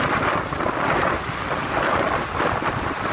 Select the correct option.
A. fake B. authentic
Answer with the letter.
B